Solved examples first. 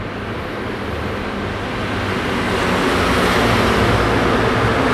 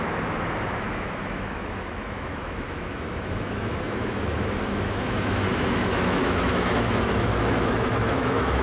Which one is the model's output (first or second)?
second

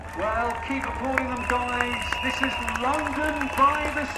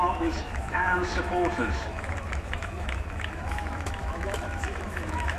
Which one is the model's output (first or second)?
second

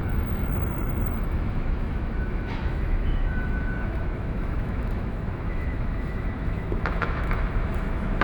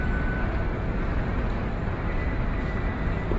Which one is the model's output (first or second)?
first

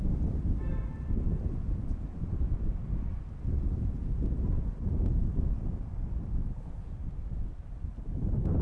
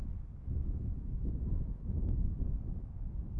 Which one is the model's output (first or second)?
second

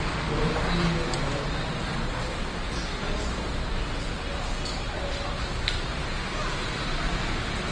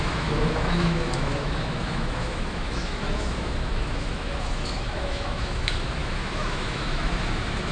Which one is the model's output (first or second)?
second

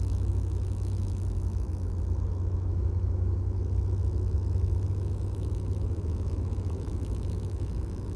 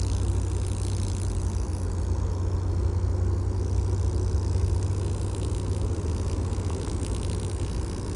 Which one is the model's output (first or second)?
first